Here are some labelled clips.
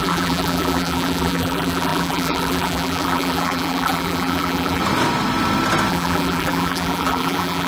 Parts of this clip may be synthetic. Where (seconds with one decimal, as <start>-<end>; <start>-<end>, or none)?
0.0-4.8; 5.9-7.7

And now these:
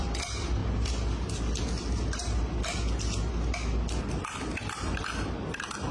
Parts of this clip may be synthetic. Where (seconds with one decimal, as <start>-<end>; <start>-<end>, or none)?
0.0-0.6; 4.1-5.9

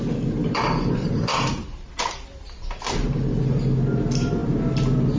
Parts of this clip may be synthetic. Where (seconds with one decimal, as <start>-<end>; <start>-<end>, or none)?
0.4-3.4